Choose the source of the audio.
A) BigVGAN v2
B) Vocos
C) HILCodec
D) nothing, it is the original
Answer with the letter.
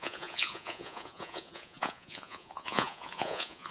B